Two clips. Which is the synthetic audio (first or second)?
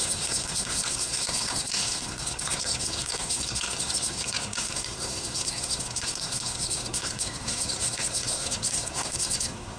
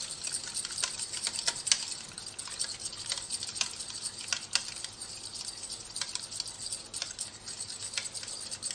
first